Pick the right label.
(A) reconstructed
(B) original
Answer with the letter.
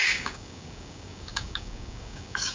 A